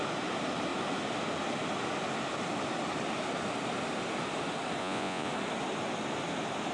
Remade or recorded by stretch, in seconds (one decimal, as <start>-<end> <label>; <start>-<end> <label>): 0.0-4.8 recorded; 4.8-5.3 remade; 5.3-6.7 recorded